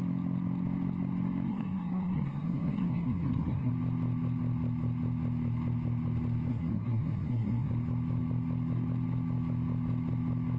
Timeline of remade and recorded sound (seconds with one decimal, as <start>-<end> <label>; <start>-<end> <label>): 0.0-1.5 recorded; 1.5-3.7 remade; 3.7-6.5 recorded; 6.5-7.7 remade; 7.7-10.6 recorded